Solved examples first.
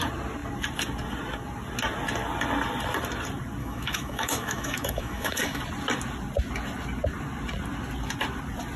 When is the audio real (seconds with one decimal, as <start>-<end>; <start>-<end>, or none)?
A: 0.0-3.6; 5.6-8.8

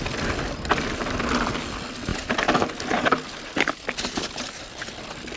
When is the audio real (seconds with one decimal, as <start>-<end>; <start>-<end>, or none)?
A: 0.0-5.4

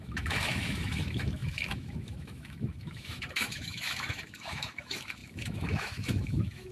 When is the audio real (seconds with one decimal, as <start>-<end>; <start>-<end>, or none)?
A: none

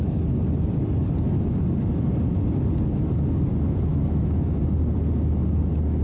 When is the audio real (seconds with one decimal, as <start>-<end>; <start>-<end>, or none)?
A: 0.0-3.9; 4.6-6.0

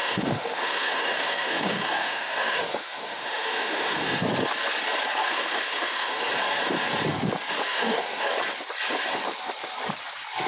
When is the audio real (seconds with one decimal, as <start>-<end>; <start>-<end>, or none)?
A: 4.2-5.2; 6.2-7.6; 8.3-10.5